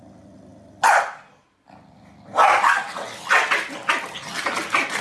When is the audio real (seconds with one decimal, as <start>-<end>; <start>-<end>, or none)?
0.0-5.0